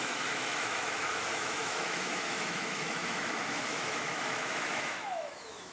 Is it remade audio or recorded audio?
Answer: remade